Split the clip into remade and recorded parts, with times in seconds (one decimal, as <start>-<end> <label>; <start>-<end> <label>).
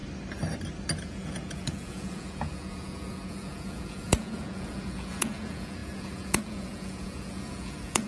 0.0-1.0 recorded; 1.0-8.1 remade